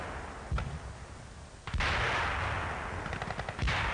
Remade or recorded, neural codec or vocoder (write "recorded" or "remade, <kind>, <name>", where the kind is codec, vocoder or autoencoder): recorded